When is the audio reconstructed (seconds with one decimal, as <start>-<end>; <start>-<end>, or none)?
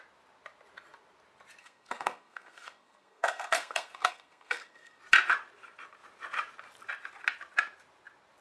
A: 1.6-5.0